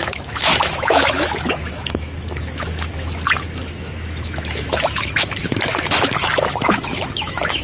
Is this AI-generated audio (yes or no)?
yes